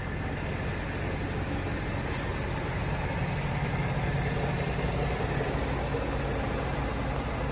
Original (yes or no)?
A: yes